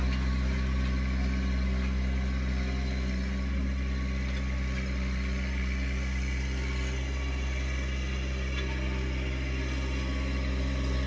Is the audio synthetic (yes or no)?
no